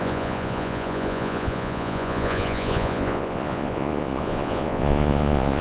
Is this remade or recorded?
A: remade